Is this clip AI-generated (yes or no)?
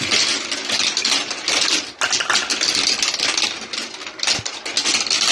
no